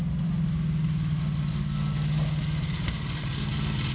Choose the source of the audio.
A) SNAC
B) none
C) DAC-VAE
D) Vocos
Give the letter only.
B